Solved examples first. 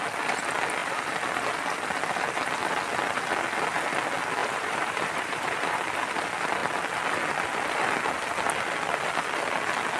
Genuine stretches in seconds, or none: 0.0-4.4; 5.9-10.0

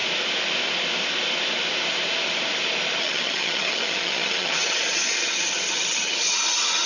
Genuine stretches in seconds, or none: 0.0-3.0

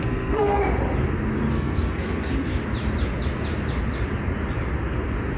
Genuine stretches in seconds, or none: 0.6-1.5; 2.6-5.4

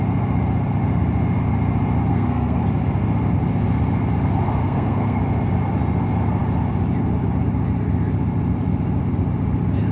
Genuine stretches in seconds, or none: 0.0-2.1; 2.6-4.6; 5.2-9.9

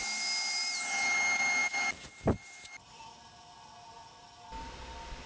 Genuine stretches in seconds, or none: 0.0-5.3

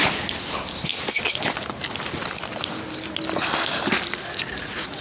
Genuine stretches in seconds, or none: 0.0-5.0

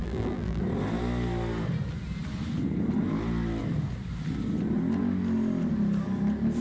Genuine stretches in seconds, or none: 0.6-6.6

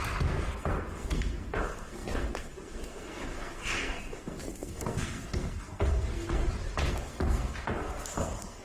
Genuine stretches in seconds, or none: 6.4-6.9